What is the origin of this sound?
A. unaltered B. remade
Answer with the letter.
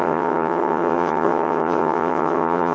B